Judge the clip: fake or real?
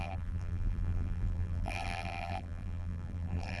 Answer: fake